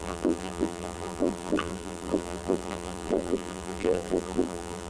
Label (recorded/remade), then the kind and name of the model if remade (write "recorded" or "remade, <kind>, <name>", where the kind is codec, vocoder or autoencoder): remade, vocoder, BigVGAN v2